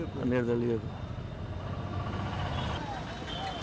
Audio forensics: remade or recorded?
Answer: recorded